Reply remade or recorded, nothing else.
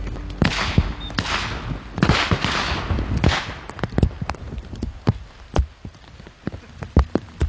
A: recorded